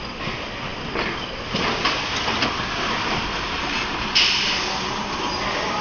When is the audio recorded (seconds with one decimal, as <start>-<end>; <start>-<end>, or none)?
0.0-5.8